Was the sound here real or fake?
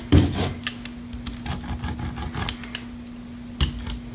real